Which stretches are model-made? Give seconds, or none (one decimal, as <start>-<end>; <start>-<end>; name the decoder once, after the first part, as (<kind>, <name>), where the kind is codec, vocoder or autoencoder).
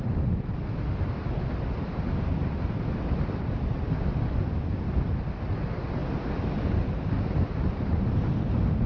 none